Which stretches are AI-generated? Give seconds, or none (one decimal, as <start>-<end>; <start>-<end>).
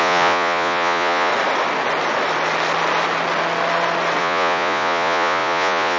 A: 0.0-1.3; 4.2-6.0